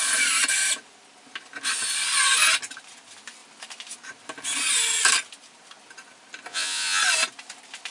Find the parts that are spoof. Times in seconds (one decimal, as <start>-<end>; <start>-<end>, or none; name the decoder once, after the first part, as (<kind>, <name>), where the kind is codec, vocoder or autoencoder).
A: 6.5-7.0 (vocoder, Vocos)